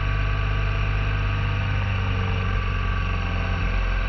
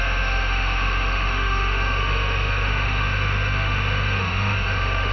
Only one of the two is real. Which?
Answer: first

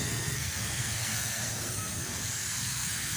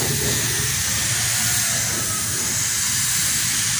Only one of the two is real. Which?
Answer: second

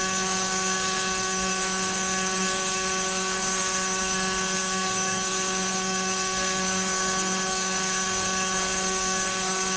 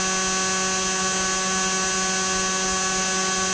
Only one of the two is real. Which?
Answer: second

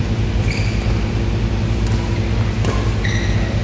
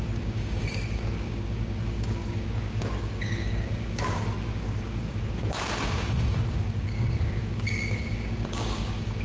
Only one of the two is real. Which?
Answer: first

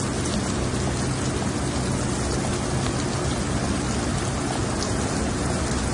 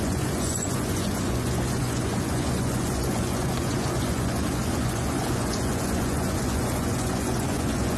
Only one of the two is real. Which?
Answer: first